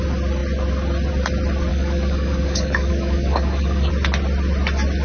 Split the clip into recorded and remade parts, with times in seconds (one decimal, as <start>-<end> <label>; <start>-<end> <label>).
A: 0.0-1.7 recorded; 1.7-3.9 remade; 3.9-5.0 recorded